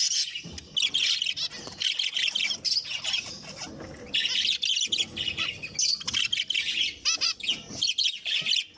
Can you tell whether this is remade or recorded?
recorded